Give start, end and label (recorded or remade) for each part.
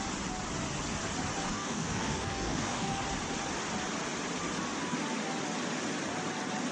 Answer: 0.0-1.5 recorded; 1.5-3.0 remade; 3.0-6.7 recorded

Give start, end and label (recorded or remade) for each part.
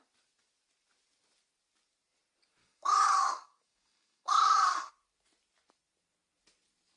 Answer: 0.0-2.6 recorded; 2.6-4.9 remade; 4.9-7.0 recorded